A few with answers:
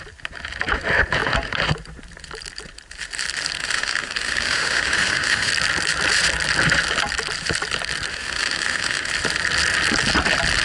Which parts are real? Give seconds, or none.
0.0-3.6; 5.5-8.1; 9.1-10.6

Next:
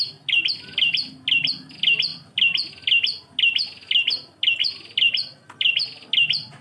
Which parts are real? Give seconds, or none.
0.0-2.1; 2.7-4.6; 5.7-6.6

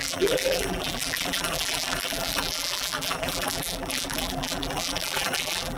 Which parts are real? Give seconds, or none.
none

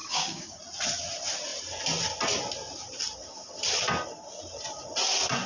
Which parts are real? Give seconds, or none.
0.6-5.5

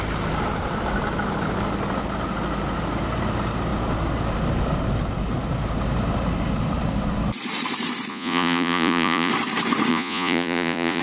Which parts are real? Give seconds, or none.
0.0-8.1; 9.3-9.9

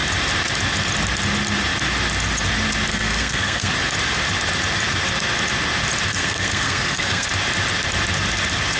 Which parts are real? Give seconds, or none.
0.0-2.9; 3.7-6.1; 7.3-8.8

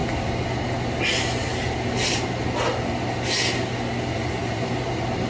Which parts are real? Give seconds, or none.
0.0-4.4

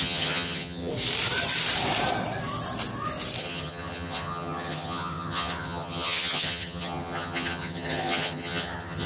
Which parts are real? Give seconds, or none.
0.9-3.4